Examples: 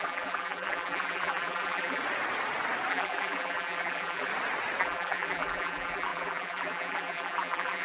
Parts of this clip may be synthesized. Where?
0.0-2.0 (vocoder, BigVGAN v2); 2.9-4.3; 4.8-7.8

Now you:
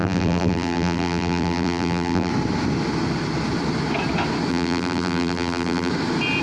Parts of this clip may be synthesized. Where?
0.0-2.3 (vocoder, BigVGAN v2); 4.5-5.9